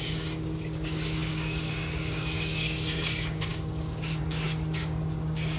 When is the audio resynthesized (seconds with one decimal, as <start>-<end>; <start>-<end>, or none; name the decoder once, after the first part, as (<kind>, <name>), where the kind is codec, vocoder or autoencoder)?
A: 0.0-5.6 (codec, DAC)